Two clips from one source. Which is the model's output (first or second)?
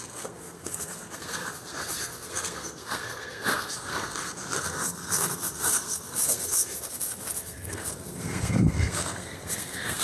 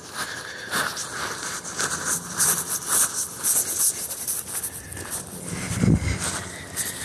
first